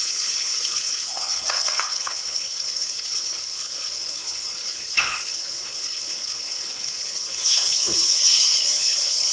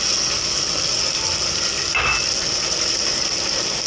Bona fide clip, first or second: second